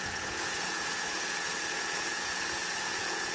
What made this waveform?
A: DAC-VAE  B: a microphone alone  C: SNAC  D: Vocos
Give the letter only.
D